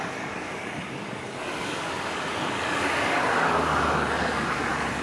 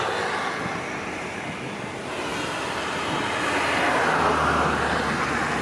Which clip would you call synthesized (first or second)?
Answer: first